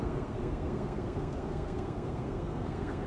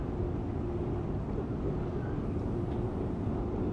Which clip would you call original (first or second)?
second